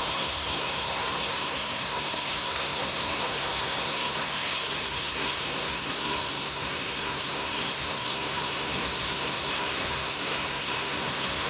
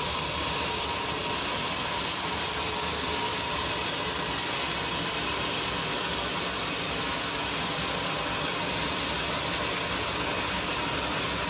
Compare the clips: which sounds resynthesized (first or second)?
first